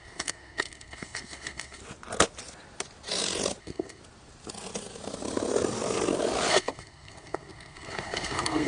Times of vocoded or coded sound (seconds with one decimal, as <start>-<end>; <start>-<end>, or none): 0.0-1.8; 3.6-4.0; 6.5-8.7

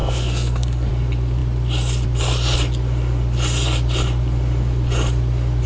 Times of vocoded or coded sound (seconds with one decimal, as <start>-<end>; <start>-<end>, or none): 0.0-0.9

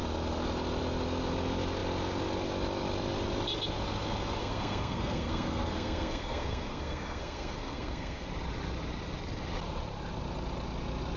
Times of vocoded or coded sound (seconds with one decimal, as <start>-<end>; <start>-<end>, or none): 4.4-8.3

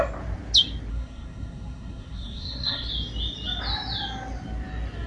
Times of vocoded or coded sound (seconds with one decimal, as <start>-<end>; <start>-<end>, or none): 0.9-2.9

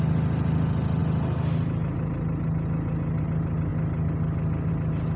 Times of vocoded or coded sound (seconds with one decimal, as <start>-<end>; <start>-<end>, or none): none